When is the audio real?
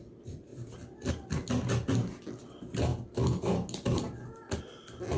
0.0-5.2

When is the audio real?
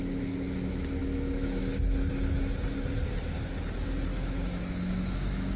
0.0-1.0; 2.1-4.1